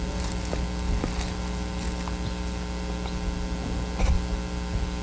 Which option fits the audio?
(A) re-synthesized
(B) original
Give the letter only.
B